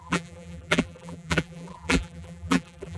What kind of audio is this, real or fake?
fake